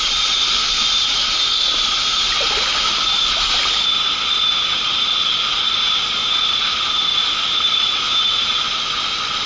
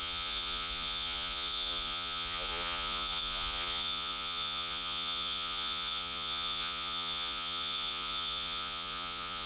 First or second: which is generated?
second